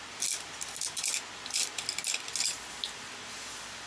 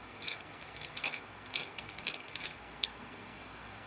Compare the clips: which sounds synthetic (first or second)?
second